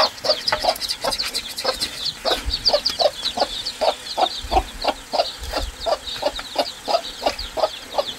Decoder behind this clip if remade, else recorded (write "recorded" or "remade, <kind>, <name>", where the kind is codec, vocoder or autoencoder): recorded